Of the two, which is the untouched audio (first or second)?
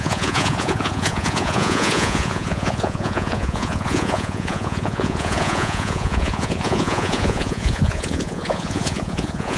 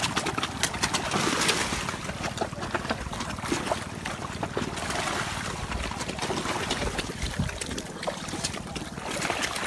second